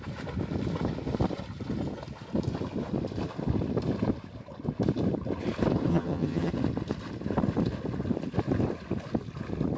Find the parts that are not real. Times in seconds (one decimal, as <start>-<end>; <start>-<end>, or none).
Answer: 5.9-6.5